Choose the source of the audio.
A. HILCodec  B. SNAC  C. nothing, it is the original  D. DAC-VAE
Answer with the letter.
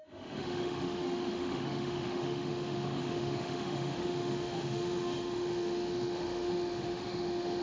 D